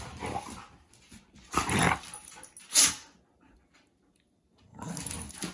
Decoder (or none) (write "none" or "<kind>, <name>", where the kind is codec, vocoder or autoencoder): none